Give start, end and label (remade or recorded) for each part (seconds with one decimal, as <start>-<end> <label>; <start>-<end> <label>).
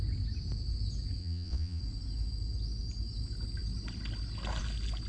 0.0-1.2 recorded; 1.2-1.8 remade; 1.8-5.1 recorded